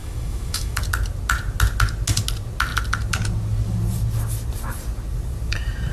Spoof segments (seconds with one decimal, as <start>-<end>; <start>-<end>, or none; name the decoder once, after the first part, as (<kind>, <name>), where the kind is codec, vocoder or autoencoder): 0.0-0.8 (autoencoder, DAC-VAE)